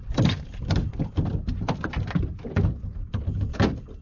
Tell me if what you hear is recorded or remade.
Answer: recorded